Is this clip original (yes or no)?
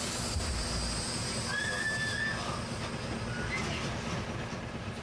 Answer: yes